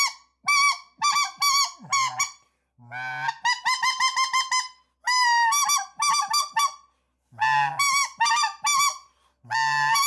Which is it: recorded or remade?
recorded